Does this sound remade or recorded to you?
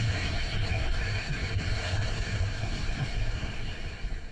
remade